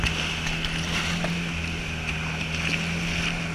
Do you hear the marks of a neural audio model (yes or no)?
no